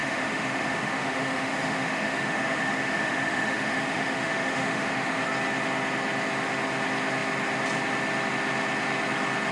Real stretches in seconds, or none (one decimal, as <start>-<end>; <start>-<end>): 5.2-9.5